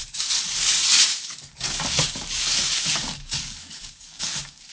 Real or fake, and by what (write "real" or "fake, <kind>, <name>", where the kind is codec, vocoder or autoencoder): fake, codec, DAC